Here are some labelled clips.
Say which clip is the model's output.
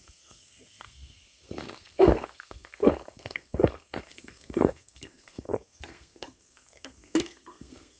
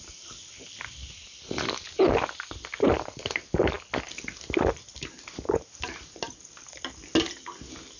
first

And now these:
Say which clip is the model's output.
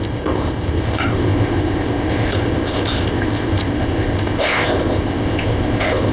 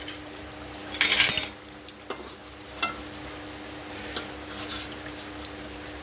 first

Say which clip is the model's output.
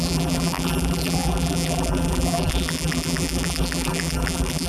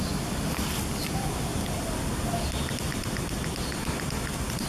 first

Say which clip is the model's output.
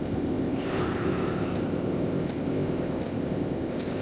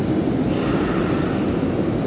first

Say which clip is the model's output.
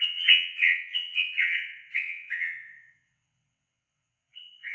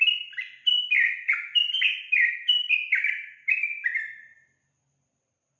first